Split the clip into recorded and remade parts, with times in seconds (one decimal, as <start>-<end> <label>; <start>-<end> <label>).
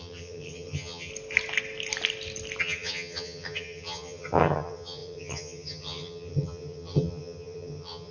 0.0-1.1 remade; 1.1-2.6 recorded; 2.6-8.1 remade